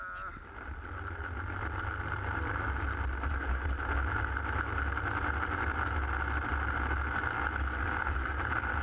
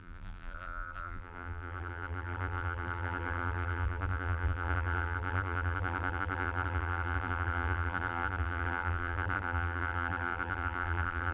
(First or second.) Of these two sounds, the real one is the first